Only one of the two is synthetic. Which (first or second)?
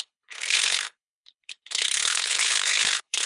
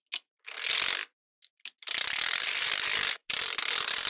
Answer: first